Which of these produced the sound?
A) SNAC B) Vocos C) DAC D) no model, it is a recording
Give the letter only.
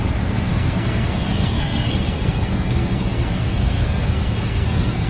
A